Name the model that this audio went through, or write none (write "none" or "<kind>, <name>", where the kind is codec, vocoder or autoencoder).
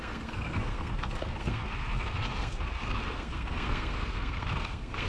codec, SNAC